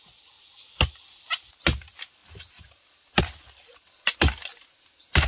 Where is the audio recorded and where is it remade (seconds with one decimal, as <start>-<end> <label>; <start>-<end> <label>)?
0.0-5.3 recorded